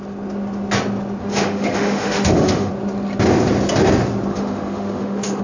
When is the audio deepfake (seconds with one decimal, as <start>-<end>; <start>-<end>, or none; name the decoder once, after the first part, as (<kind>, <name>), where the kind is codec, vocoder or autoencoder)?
1.2-2.7 (autoencoder, DAC-VAE); 4.3-5.4